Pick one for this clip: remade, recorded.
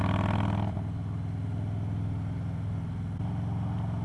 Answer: recorded